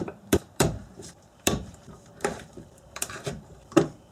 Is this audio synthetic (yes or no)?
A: yes